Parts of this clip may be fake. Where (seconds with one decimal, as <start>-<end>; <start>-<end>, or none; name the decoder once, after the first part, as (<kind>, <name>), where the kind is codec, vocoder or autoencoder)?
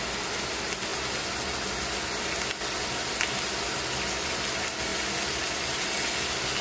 none